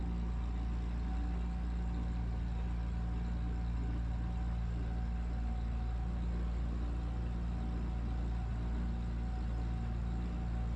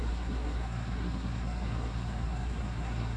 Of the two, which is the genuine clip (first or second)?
first